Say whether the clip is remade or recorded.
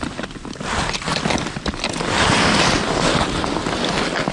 recorded